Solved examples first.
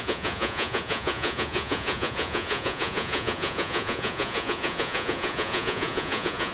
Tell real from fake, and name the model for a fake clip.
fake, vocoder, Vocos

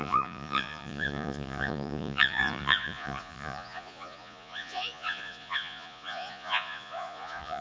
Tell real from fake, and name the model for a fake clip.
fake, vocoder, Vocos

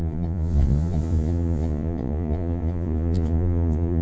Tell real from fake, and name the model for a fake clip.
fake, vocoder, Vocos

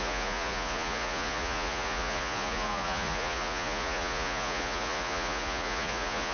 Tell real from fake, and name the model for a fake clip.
fake, vocoder, Vocos